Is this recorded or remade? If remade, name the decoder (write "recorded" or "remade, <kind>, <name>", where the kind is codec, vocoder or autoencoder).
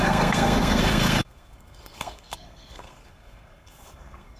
remade, codec, SNAC